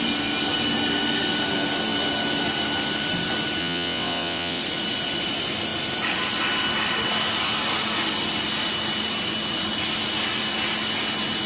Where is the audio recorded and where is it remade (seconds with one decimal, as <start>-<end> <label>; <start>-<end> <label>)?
0.0-3.6 recorded; 3.6-4.6 remade; 4.6-11.5 recorded